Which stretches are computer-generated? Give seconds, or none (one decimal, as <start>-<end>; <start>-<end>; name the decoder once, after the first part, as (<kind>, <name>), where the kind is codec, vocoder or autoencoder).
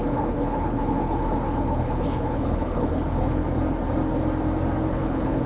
0.0-3.4 (codec, HILCodec); 4.8-5.5